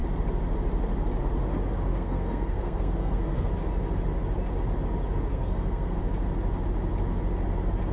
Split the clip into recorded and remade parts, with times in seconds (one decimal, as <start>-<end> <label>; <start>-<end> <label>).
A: 0.0-1.9 recorded; 1.9-3.5 remade; 3.5-5.3 recorded; 5.3-6.0 remade; 6.0-7.9 recorded